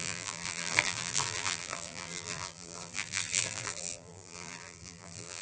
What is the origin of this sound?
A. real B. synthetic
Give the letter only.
B